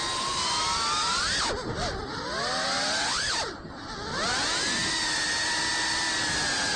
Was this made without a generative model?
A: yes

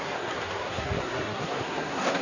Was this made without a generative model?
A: no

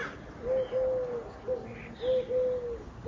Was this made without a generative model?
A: yes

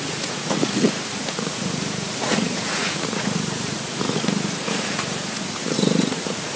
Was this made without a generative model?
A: no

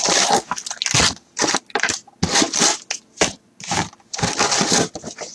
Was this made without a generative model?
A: yes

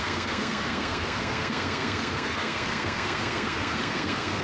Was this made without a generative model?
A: no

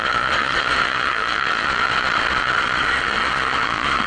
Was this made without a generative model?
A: no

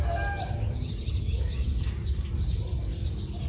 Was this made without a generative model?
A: yes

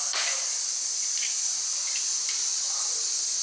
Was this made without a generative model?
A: yes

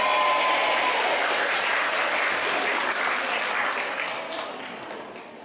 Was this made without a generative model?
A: yes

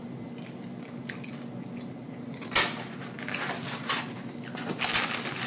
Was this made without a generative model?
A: yes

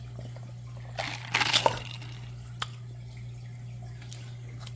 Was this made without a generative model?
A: yes